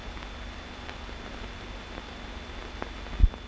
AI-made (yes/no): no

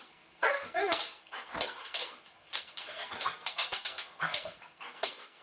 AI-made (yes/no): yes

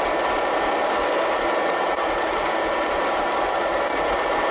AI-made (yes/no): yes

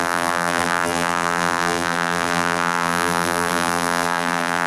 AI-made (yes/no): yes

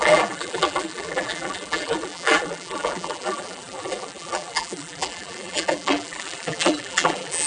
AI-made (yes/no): yes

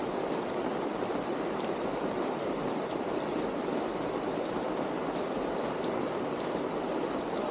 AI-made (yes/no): no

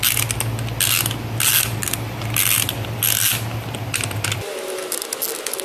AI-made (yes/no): no